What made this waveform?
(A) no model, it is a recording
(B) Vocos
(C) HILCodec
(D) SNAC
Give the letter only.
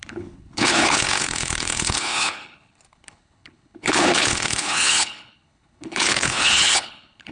C